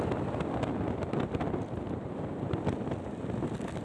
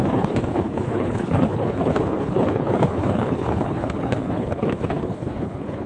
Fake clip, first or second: second